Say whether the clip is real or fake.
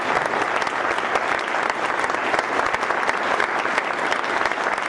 real